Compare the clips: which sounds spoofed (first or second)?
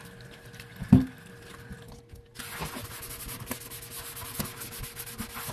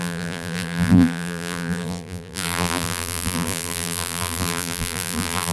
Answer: second